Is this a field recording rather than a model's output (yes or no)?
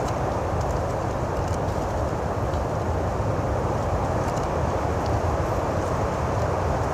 yes